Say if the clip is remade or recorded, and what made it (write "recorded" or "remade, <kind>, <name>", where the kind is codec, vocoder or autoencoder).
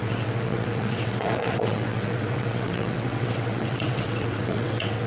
remade, vocoder, WaveNeXt